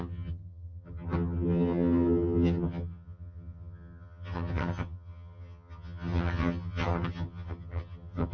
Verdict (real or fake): fake